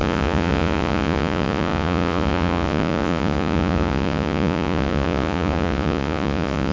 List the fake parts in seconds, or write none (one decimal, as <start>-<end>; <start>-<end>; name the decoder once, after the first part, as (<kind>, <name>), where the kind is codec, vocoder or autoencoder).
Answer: 0.0-6.7 (vocoder, Vocos)